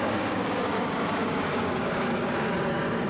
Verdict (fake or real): fake